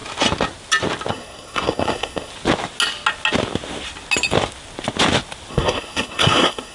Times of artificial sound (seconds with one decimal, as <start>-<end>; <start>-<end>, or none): 1.1-2.3; 5.5-6.7